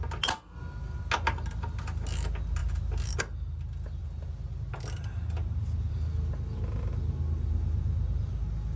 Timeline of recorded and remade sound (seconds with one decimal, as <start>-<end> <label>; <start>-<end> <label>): 0.0-8.8 recorded